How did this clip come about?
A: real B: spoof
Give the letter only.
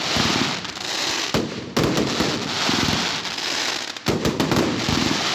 A